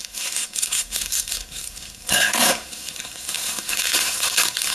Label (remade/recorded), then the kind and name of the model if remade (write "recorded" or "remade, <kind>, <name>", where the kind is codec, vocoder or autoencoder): remade, codec, SNAC